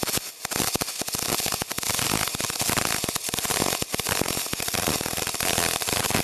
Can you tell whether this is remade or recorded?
remade